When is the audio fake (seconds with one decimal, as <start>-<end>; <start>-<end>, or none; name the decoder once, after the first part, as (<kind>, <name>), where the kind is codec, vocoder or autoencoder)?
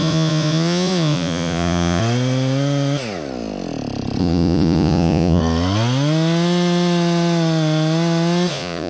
0.0-2.0 (vocoder, Vocos); 4.2-5.4; 8.5-8.9